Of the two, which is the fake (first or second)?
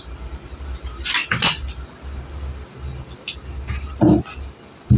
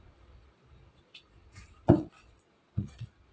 second